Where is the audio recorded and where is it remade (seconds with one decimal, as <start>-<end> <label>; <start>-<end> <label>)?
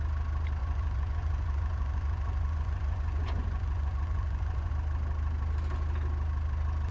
0.0-0.6 recorded; 0.6-4.7 remade; 4.7-6.9 recorded